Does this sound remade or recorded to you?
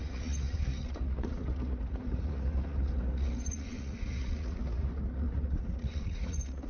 remade